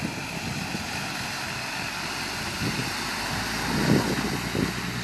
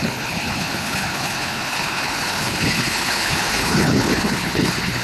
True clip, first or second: first